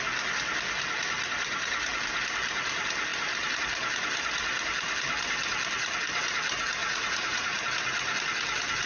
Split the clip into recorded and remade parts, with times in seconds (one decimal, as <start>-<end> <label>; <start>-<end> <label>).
0.0-6.8 recorded; 6.8-7.6 remade; 7.6-8.9 recorded